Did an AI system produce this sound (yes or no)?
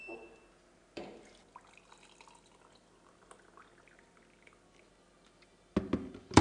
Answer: no